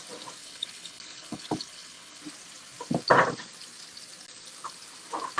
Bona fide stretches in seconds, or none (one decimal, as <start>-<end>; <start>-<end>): 0.0-0.4; 2.2-5.4